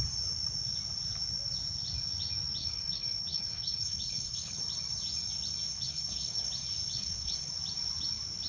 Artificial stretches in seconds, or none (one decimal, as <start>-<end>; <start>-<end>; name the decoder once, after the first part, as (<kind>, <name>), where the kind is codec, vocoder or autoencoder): 2.6-4.6 (codec, HILCodec); 5.7-6.5; 6.9-7.5